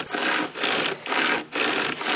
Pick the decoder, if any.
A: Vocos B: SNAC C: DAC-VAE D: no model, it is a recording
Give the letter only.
D